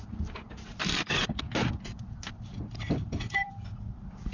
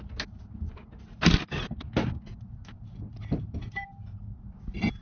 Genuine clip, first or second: second